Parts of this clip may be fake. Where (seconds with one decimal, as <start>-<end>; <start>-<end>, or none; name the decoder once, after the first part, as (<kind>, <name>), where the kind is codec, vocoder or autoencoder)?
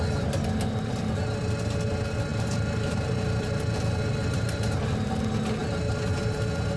2.3-3.6 (vocoder, BigVGAN v2); 4.1-4.7